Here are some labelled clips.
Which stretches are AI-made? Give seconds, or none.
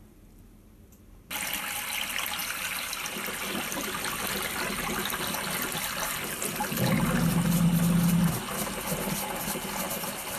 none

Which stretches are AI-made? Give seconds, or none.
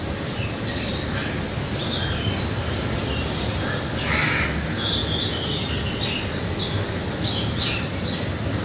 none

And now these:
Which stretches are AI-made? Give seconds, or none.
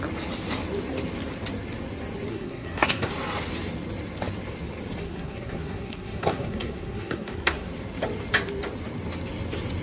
2.3-3.1 (codec, SNAC); 5.0-7.7